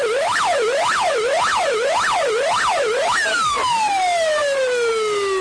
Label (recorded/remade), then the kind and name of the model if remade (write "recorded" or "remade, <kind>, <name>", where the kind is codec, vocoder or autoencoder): recorded